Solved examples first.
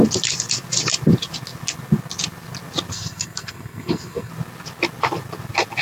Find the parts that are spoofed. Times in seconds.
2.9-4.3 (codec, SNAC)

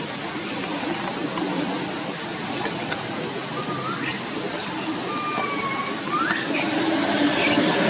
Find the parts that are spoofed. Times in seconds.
none

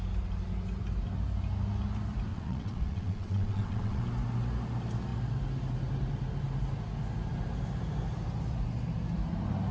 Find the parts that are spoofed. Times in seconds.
2.3-4.0 (vocoder, WaveNeXt)